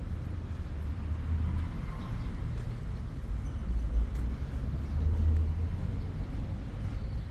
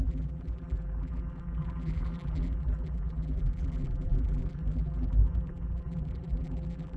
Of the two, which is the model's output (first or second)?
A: second